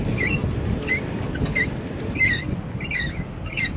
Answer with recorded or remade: recorded